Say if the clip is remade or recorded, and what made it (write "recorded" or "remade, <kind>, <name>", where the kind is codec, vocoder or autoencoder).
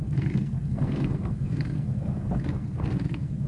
remade, codec, SNAC